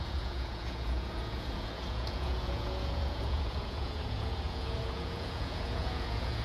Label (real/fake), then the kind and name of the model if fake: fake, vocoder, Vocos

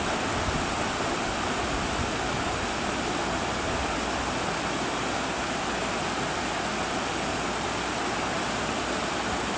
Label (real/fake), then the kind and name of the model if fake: real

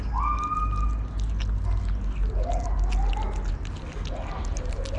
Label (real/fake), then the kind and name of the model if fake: real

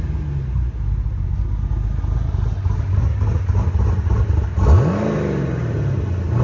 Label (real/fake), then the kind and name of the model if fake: real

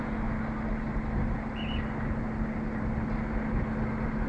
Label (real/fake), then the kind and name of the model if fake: real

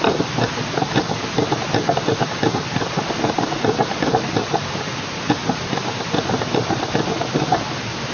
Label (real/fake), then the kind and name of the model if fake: real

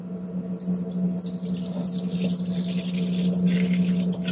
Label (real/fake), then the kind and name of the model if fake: real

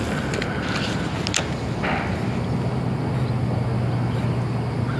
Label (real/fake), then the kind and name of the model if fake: real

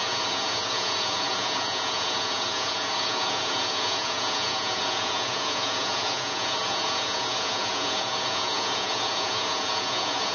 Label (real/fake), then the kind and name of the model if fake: fake, vocoder, Vocos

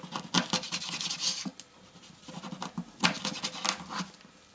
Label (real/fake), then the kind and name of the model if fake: real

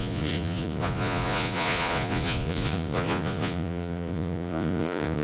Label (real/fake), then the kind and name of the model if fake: fake, vocoder, Vocos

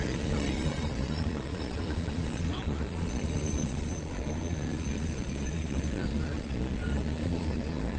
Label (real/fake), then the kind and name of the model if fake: fake, vocoder, Vocos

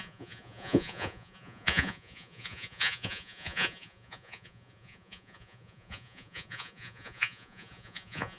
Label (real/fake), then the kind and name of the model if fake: fake, vocoder, Vocos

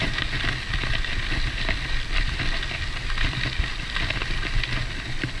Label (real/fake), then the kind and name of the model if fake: real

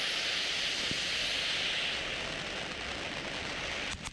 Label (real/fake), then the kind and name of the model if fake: real